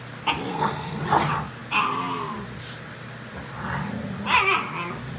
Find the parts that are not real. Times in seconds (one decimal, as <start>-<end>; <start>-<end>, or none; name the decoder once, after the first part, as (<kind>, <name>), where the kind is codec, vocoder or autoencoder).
0.5-1.0 (codec, SNAC)